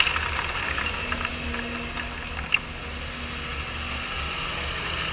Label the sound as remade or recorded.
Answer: recorded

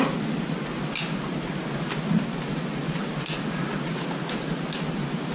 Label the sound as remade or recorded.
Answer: recorded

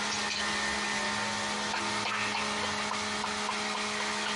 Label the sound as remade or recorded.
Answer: recorded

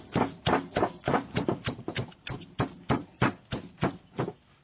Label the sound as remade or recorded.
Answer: recorded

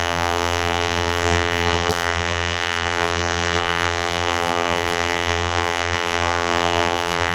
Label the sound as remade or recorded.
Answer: remade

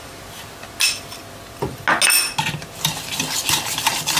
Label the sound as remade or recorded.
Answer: recorded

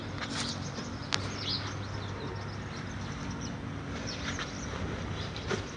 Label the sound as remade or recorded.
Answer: recorded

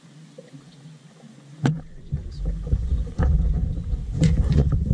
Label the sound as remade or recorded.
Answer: remade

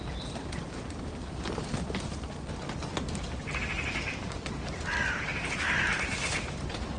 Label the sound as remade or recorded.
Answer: recorded